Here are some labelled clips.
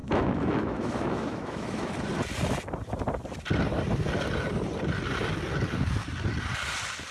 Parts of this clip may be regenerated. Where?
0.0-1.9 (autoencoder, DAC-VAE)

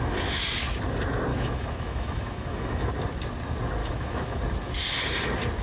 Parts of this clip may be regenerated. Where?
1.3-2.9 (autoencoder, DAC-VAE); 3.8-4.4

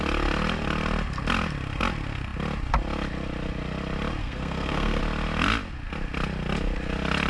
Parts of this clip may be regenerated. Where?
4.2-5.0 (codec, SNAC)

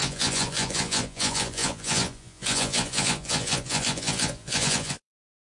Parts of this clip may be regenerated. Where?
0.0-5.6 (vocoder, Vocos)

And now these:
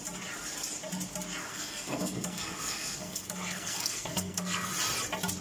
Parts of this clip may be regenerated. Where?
1.5-4.7 (codec, SNAC)

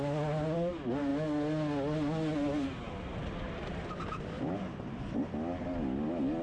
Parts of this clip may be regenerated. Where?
none